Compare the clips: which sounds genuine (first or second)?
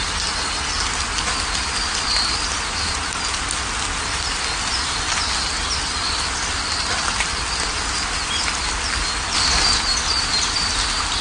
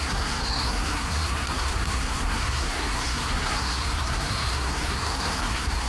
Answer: first